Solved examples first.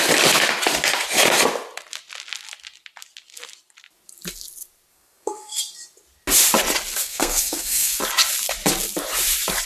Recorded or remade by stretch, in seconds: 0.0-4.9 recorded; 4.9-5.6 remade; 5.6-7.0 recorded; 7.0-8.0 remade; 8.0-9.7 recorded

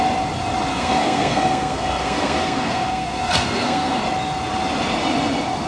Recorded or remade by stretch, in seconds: 0.0-0.7 recorded; 0.7-4.0 remade; 4.0-5.7 recorded

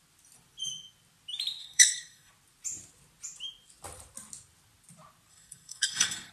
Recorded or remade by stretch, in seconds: 0.0-1.6 recorded; 1.6-2.3 remade; 2.3-5.3 recorded; 5.3-6.3 remade

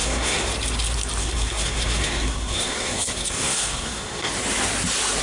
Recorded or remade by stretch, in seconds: 0.0-0.5 remade; 0.5-1.2 recorded; 1.2-4.3 remade; 4.3-5.2 recorded

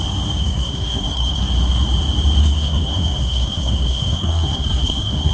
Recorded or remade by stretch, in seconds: 0.0-0.4 recorded; 0.4-1.4 remade; 1.4-2.4 recorded; 2.4-5.3 remade